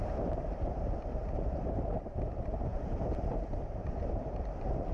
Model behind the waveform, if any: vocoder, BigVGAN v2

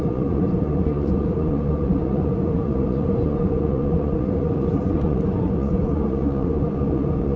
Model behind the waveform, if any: vocoder, Vocos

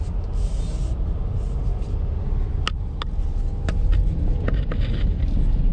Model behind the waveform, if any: none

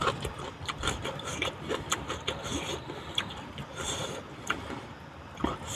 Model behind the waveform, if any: vocoder, BigVGAN v2